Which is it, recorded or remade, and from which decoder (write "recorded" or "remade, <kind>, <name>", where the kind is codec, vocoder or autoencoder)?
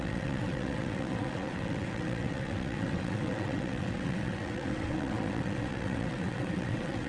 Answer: remade, vocoder, WaveNeXt